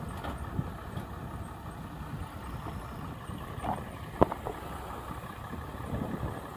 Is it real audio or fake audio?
real